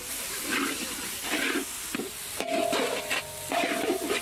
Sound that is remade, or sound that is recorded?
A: recorded